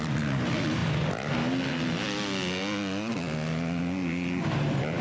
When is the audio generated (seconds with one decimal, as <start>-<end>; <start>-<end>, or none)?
none